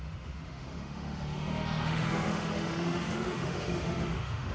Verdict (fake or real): fake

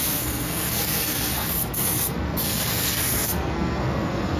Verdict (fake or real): fake